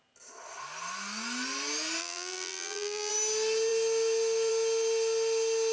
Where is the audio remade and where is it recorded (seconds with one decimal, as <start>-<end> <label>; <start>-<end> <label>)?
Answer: 0.0-2.0 recorded; 2.0-3.1 remade; 3.1-5.7 recorded